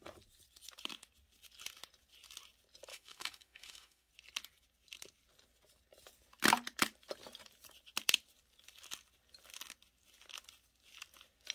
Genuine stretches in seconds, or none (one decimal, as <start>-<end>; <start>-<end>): 0.0-2.9; 4.1-11.5